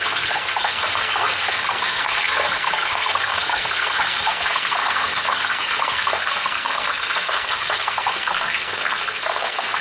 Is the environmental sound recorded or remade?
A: remade